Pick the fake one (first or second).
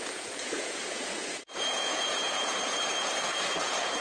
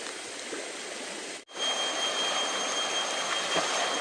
first